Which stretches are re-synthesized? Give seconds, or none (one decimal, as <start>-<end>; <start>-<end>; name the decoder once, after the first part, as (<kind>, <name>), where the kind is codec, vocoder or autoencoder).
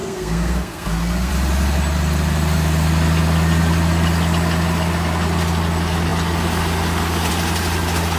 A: 0.0-1.3 (codec, SNAC)